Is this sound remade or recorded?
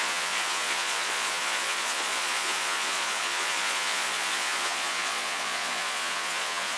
remade